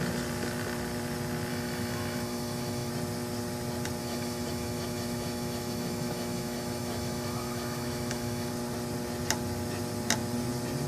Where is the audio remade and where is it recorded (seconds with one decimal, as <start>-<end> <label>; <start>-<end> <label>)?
0.0-1.5 recorded; 1.5-2.9 remade; 2.9-4.0 recorded; 4.0-8.5 remade; 8.5-10.9 recorded